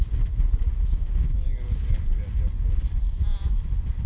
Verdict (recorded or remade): recorded